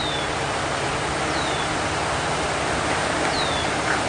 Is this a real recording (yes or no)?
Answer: yes